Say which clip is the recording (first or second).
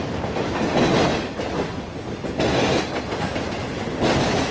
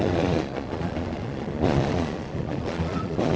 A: first